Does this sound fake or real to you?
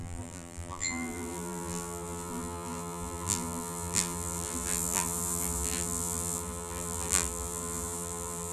fake